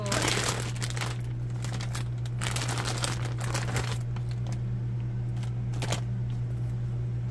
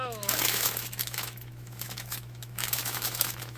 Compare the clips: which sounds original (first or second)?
first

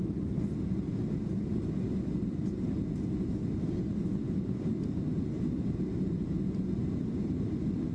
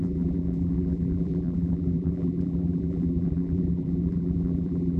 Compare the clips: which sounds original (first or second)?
first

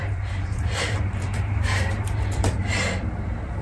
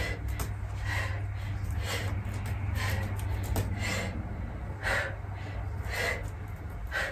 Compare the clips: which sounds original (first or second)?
second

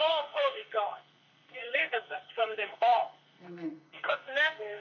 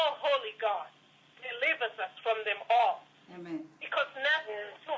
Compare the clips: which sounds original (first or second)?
second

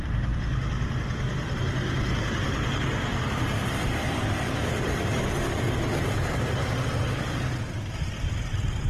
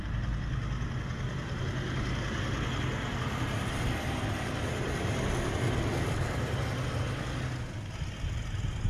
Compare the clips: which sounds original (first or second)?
second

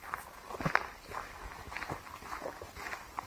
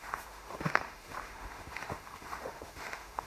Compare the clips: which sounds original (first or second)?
first